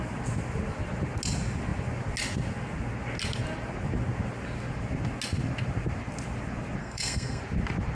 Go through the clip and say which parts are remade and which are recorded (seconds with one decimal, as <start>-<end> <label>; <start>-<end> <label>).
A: 0.0-6.8 recorded; 6.8-7.4 remade; 7.4-7.9 recorded